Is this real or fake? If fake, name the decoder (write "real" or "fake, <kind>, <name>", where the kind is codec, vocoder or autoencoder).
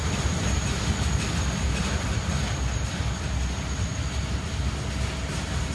real